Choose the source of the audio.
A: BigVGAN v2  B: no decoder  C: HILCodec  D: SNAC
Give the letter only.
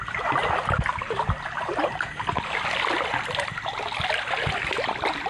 B